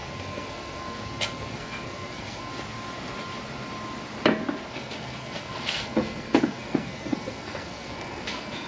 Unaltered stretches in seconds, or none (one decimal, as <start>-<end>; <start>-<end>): 2.5-4.7